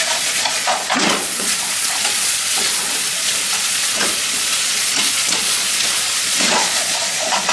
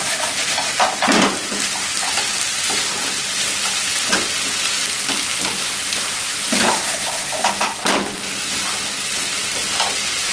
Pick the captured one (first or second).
second